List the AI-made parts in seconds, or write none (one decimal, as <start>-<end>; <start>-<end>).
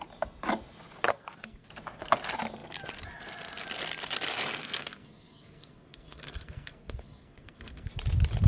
1.1-1.7; 4.6-7.9